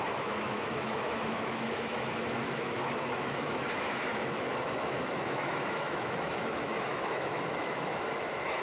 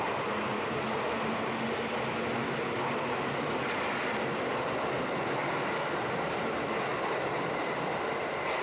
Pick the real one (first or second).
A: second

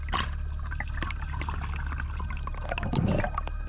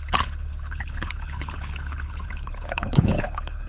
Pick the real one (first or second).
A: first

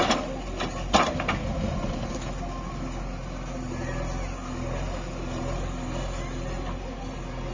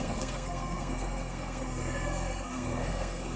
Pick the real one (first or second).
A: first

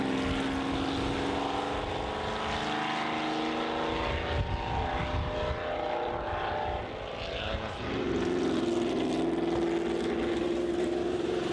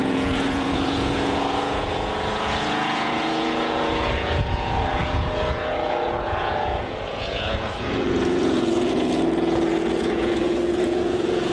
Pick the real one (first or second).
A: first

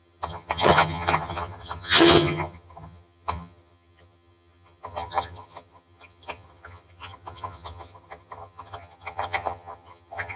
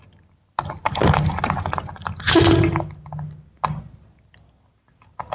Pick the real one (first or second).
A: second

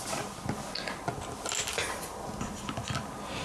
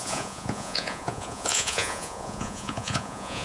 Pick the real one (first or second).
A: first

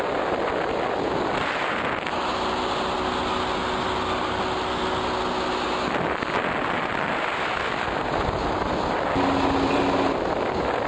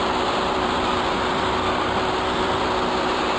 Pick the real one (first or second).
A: first